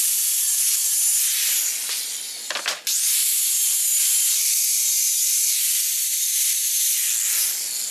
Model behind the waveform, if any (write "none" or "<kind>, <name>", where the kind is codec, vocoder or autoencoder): none